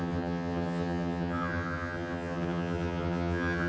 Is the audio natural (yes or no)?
no